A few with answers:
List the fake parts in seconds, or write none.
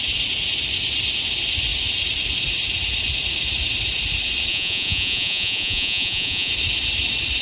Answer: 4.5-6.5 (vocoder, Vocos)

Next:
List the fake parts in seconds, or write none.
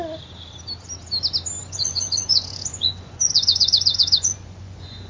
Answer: 1.6-5.1 (vocoder, Vocos)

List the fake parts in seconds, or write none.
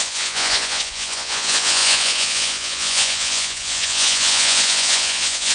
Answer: 0.0-5.5 (vocoder, Vocos)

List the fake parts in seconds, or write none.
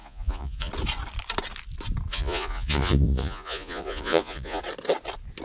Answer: 0.0-0.7 (vocoder, Vocos); 2.1-4.6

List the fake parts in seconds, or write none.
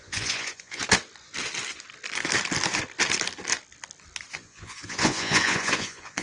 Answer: 0.0-0.8 (vocoder, Vocos); 4.3-6.2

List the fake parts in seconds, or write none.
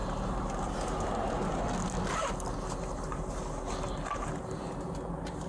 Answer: none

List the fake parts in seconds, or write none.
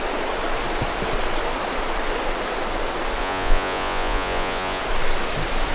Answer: 3.2-4.8 (vocoder, Vocos)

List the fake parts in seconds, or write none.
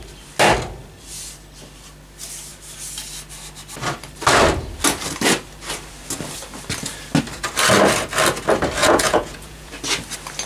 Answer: 8.8-9.7 (vocoder, Vocos)